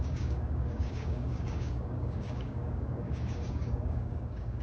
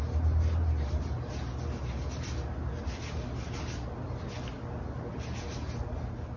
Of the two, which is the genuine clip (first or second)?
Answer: second